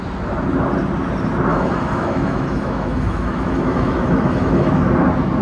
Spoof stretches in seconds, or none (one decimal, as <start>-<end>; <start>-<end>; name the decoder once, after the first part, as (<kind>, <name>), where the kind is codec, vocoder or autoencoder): 1.5-4.7 (autoencoder, DAC-VAE)